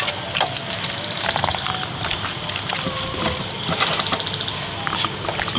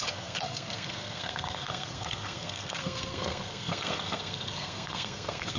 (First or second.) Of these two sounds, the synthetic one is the second